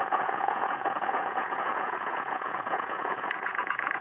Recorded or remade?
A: remade